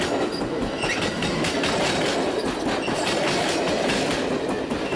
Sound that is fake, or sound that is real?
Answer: real